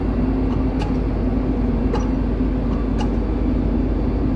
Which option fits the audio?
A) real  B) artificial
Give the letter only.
A